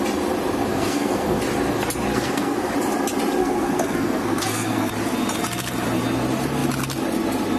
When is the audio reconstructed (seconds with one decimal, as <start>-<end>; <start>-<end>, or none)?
0.7-1.4; 2.1-2.7; 3.4-4.9

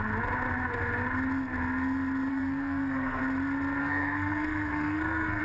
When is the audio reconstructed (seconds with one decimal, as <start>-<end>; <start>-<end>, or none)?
2.3-3.2; 3.8-5.4

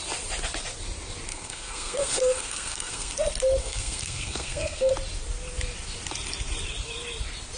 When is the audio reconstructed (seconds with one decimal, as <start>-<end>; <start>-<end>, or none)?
1.3-3.1; 3.6-4.9

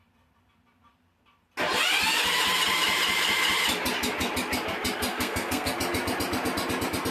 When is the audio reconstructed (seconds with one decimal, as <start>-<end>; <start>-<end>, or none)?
5.1-5.7